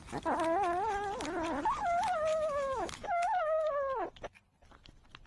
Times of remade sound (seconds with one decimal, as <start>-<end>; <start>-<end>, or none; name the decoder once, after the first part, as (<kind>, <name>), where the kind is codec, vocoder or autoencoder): 2.3-3.7 (autoencoder, DAC-VAE)